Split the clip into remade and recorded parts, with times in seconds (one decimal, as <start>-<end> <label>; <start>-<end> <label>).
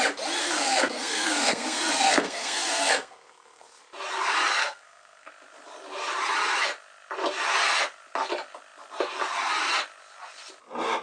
0.0-0.4 recorded; 0.4-3.8 remade; 3.8-4.6 recorded; 4.6-5.3 remade; 5.3-11.0 recorded